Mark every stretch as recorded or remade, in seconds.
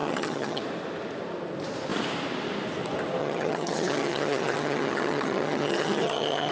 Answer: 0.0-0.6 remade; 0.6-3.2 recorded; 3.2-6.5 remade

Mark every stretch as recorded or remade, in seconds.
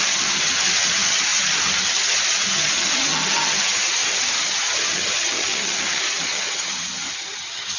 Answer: 0.0-7.8 remade